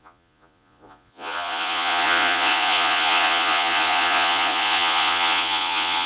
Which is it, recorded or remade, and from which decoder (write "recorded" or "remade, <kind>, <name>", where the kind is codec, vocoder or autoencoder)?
remade, vocoder, Vocos